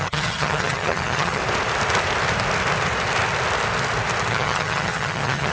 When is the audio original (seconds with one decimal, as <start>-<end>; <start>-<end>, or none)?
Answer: 1.4-4.3